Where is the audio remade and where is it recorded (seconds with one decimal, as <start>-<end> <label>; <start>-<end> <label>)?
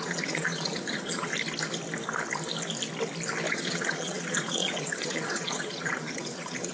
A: 0.0-1.3 remade; 1.3-3.5 recorded; 3.5-6.7 remade